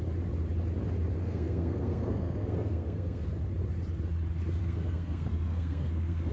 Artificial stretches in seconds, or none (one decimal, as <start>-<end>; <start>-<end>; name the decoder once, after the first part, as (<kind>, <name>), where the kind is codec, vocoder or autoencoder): 1.2-3.3 (codec, SNAC); 4.6-6.3